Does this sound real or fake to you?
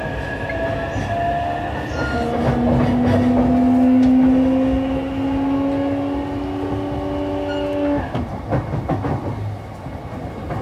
real